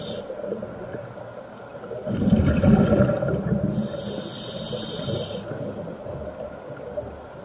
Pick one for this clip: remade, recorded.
recorded